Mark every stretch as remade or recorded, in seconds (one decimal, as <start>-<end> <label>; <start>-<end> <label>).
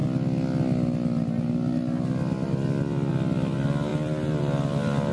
0.0-5.1 recorded